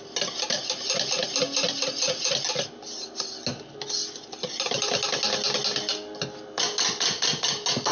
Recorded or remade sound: recorded